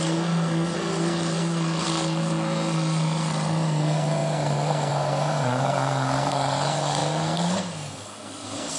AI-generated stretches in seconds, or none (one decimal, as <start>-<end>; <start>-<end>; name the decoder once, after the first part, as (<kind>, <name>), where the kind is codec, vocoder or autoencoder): 0.0-8.8 (codec, SNAC)